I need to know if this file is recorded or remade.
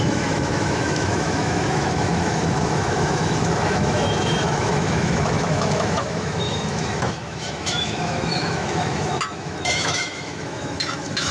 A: remade